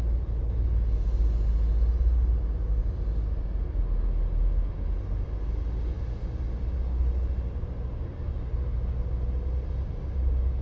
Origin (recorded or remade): recorded